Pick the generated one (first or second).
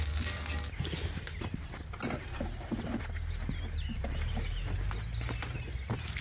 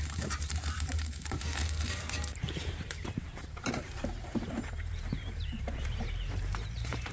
second